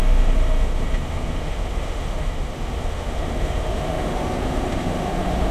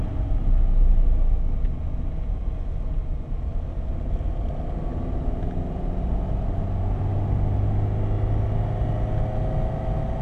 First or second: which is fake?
first